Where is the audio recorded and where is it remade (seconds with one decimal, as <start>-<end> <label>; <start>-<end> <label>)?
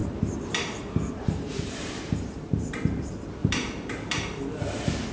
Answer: 0.0-2.8 remade; 2.8-3.4 recorded; 3.4-4.4 remade; 4.4-5.1 recorded